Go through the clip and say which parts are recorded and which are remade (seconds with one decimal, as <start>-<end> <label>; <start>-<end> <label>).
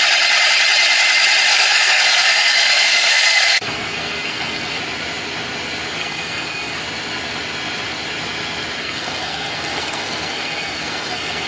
0.0-1.5 recorded; 1.5-4.8 remade; 4.8-6.0 recorded; 6.0-6.8 remade; 6.8-8.8 recorded; 8.8-11.5 remade